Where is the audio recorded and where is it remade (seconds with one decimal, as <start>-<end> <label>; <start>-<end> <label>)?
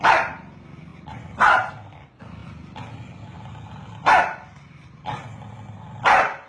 0.0-6.5 recorded